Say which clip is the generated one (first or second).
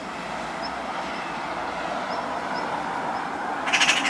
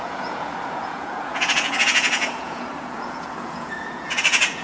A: second